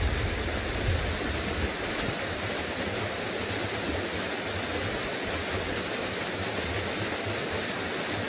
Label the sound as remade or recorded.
recorded